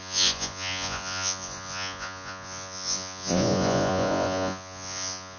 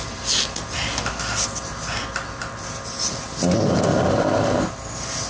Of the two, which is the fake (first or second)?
first